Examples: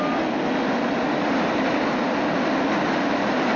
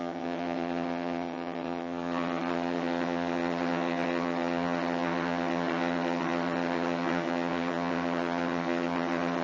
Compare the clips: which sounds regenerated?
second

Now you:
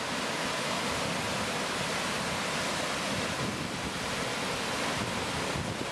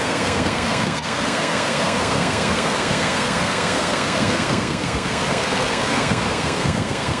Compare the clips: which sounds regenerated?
second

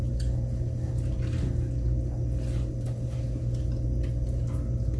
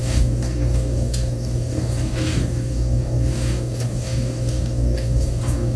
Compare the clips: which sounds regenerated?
second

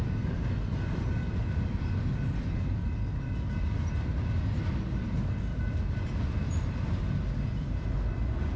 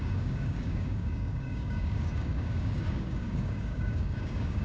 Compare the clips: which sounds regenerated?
second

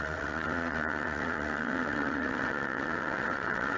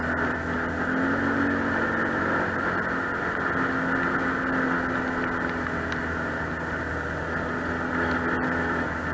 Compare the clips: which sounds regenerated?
first